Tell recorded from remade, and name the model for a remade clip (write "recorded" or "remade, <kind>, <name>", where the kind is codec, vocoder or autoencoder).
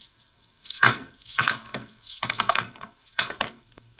remade, codec, SNAC